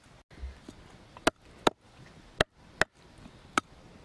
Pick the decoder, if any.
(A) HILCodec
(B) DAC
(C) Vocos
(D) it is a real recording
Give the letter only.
D